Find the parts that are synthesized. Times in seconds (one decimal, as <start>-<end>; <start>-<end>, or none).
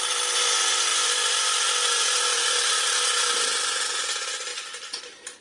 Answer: 0.0-5.4